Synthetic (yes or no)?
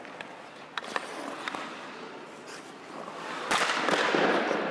no